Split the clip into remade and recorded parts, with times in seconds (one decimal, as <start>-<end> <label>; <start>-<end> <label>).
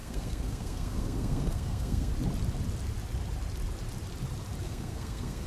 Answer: 0.0-2.1 remade; 2.1-4.6 recorded; 4.6-5.5 remade